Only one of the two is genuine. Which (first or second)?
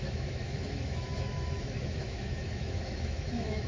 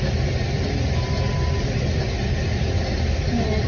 second